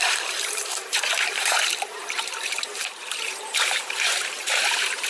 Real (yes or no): no